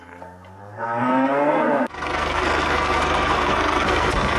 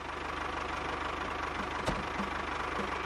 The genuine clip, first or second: second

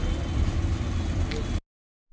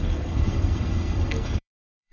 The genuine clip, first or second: first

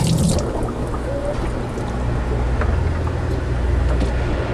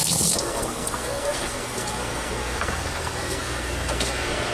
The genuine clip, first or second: first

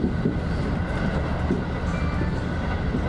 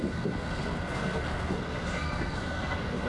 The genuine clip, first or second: first